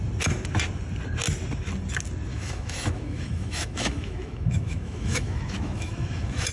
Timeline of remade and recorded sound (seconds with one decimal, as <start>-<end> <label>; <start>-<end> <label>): 0.0-2.3 recorded; 2.3-6.5 remade